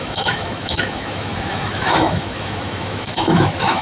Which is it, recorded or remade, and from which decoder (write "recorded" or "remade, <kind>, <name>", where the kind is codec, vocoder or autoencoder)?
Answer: remade, autoencoder, DAC-VAE